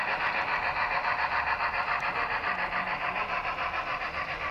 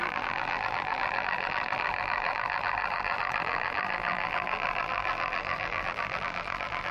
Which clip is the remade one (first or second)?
second